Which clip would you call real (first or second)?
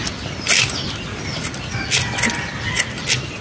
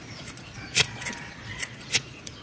first